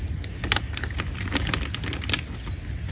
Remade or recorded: recorded